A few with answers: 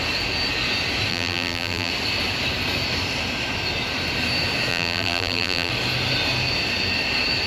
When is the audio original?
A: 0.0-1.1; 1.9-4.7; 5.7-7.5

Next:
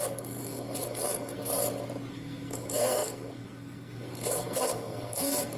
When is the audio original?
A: 1.5-2.1

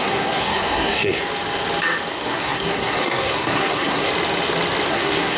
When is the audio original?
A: 1.2-2.1; 4.1-4.9